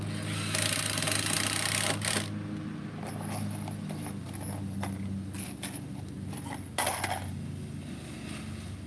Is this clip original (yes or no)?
yes